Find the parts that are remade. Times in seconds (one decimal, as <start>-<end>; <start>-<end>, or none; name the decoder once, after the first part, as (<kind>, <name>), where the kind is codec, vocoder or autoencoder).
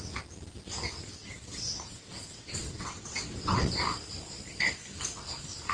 1.2-3.7 (vocoder, WaveNeXt)